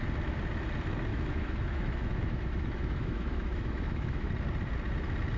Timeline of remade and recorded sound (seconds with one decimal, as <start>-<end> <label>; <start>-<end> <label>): 0.0-1.1 recorded; 1.1-4.3 remade; 4.3-5.4 recorded